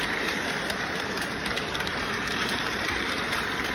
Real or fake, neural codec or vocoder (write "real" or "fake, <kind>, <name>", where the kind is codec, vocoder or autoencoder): fake, vocoder, BigVGAN v2